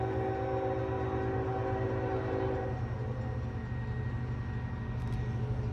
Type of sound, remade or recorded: recorded